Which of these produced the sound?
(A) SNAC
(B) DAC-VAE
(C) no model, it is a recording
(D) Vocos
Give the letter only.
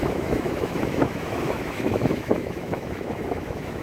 B